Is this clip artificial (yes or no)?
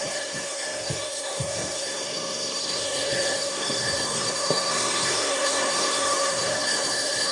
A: yes